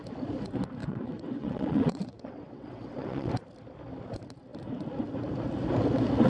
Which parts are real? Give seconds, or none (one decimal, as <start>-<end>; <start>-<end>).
0.0-0.8; 3.3-6.3